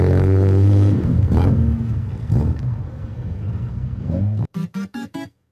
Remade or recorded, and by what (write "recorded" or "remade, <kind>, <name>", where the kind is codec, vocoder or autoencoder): remade, codec, SNAC